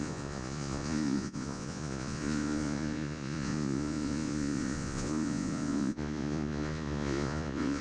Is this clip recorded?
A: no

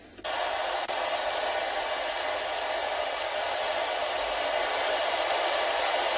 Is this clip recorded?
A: yes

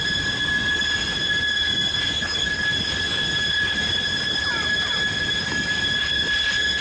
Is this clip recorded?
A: yes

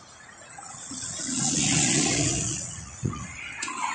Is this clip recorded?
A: no